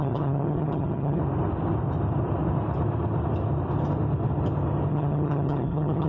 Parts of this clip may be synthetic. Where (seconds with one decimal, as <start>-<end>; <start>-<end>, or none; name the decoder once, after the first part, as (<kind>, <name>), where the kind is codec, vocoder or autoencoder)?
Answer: 0.0-1.2 (vocoder, HiFi-GAN); 4.9-6.1